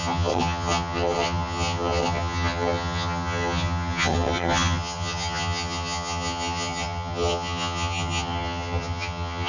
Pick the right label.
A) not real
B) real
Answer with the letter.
A